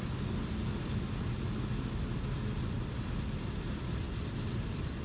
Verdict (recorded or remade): recorded